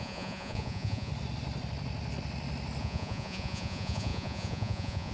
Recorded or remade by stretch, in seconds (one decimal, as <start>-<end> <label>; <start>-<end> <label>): 0.0-1.1 remade; 1.1-2.8 recorded; 2.8-5.1 remade